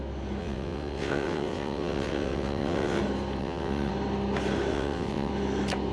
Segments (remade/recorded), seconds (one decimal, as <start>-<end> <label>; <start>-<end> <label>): 0.0-0.4 recorded; 0.4-3.0 remade; 3.0-3.4 recorded; 3.4-3.9 remade; 3.9-4.7 recorded; 4.7-5.3 remade; 5.3-5.9 recorded